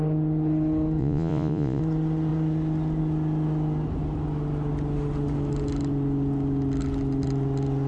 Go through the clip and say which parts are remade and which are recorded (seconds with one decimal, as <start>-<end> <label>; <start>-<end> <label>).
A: 0.0-1.0 recorded; 1.0-1.8 remade; 1.8-7.9 recorded